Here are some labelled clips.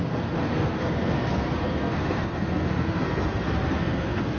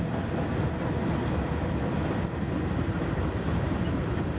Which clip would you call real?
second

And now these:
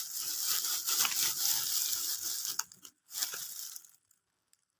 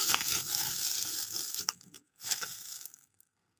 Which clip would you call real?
first